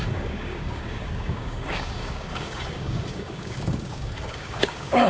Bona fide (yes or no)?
no